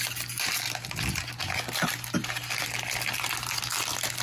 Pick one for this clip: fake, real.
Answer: real